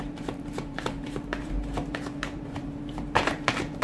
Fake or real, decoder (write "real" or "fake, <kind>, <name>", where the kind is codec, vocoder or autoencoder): fake, vocoder, BigVGAN v2